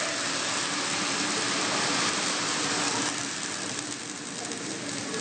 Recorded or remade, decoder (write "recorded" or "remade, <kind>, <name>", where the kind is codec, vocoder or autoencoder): recorded